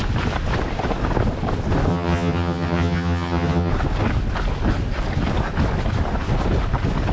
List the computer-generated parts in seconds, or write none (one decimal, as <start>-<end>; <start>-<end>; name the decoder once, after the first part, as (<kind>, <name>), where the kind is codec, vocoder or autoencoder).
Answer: 1.9-3.7 (vocoder, HiFi-GAN)